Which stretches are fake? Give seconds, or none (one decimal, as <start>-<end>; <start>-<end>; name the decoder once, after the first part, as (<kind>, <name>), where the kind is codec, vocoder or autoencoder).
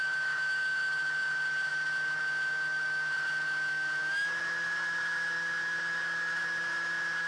0.0-7.3 (autoencoder, DAC-VAE)